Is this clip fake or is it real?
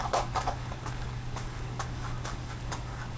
fake